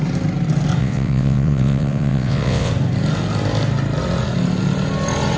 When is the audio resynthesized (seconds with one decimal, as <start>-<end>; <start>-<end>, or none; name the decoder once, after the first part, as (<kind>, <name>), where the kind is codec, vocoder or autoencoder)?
0.8-2.7 (vocoder, WaveNeXt)